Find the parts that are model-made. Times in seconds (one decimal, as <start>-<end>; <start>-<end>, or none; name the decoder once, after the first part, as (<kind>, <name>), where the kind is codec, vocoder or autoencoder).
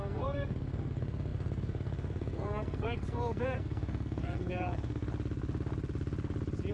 0.0-5.0 (codec, SNAC)